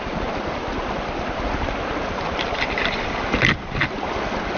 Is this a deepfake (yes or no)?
no